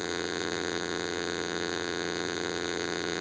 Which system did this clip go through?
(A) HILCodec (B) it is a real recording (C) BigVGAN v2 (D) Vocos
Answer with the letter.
C